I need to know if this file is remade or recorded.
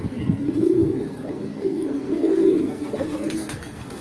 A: remade